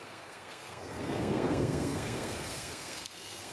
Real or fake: fake